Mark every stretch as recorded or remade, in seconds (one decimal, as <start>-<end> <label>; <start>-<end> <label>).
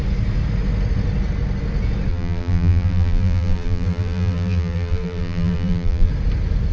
0.0-2.1 recorded; 2.1-6.1 remade; 6.1-6.7 recorded